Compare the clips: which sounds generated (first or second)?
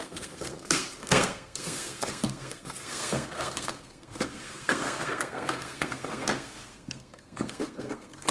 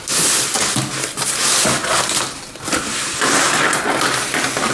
first